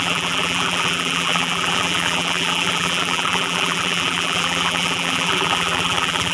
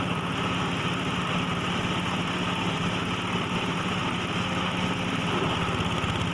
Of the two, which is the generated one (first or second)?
first